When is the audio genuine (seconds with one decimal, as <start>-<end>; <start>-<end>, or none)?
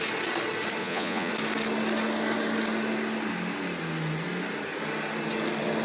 0.0-0.8; 1.3-5.8